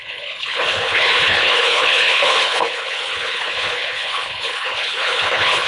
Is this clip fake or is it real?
fake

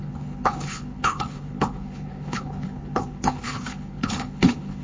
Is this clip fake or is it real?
fake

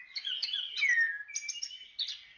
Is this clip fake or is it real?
real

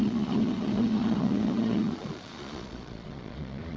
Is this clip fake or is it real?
fake